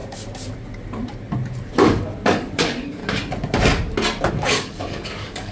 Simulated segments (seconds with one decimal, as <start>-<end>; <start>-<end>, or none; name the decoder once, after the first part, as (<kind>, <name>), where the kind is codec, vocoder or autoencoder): 1.7-3.0 (codec, DAC); 4.3-5.5